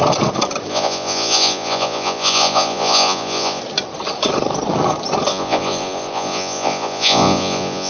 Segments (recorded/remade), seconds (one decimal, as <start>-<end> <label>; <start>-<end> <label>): 0.0-0.7 recorded; 0.7-3.6 remade; 3.6-5.3 recorded; 5.3-7.9 remade